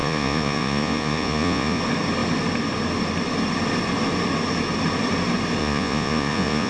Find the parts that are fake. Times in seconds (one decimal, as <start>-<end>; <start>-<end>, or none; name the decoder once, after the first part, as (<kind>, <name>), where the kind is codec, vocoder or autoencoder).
0.0-1.8 (vocoder, Vocos); 5.6-6.7